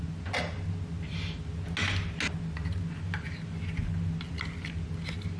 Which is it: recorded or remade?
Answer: recorded